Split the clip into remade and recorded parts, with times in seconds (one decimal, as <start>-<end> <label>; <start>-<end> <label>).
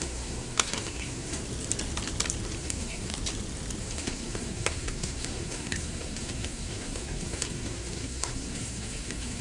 0.0-1.4 remade; 1.4-2.6 recorded; 2.6-3.1 remade; 3.1-3.8 recorded; 3.8-9.4 remade